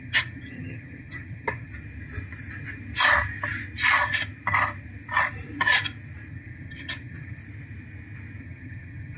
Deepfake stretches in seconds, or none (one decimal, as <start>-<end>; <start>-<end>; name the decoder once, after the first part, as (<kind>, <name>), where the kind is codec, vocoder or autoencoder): 0.0-1.7 (vocoder, HiFi-GAN); 6.3-7.4; 8.4-9.2